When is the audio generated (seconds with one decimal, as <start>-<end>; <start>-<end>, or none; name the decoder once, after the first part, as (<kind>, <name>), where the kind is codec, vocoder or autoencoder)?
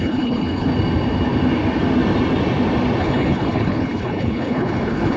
0.0-0.7 (codec, HILCodec); 3.0-5.2